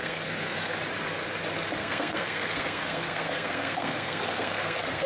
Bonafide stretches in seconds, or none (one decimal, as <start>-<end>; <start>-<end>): 0.8-1.8